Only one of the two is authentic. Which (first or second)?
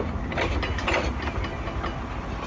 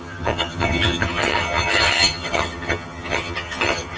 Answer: first